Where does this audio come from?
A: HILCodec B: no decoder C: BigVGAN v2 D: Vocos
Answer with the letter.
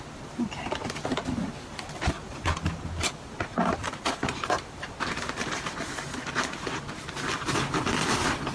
B